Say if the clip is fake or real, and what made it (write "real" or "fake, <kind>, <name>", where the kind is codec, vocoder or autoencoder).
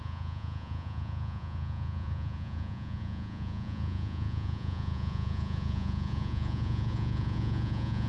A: fake, vocoder, Vocos